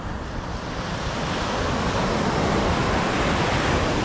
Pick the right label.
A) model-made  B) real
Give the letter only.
B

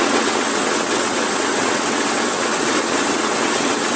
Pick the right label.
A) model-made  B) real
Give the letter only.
A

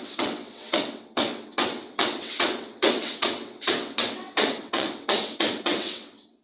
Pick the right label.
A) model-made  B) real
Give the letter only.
A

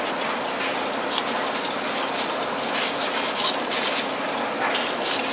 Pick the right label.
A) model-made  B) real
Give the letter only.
B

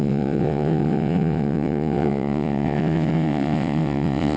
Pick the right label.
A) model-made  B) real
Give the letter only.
A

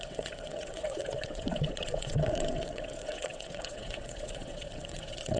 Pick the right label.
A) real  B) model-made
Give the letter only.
B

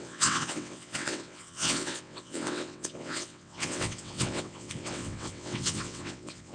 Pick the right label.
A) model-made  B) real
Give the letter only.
A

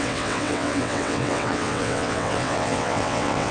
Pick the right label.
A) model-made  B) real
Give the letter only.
A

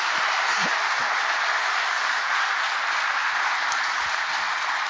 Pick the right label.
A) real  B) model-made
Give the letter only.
A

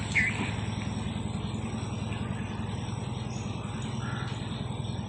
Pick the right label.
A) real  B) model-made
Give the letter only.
A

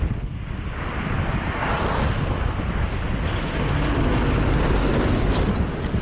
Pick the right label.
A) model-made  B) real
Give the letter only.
B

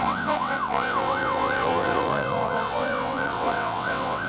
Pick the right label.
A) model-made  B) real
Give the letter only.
A